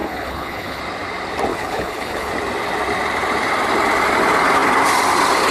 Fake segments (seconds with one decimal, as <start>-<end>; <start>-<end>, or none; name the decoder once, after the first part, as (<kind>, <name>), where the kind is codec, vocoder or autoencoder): 0.0-0.8 (codec, HILCodec); 1.5-2.3